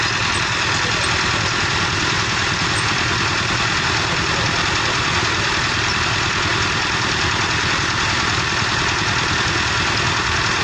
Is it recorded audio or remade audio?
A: recorded